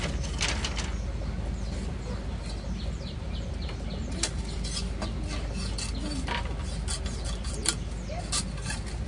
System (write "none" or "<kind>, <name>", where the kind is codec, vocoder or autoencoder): none